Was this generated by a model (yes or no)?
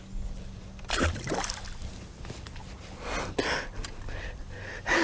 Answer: no